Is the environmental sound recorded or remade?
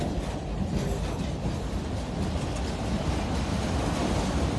recorded